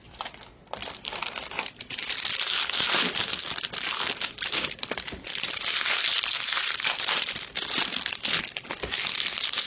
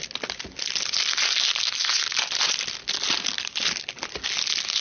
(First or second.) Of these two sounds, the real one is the second